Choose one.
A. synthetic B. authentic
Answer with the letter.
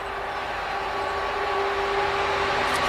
B